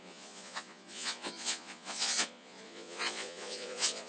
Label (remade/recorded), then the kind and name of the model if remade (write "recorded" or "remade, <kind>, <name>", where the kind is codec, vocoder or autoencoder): remade, vocoder, Vocos